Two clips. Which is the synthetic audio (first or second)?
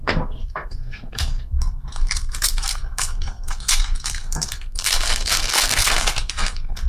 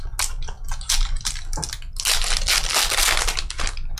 first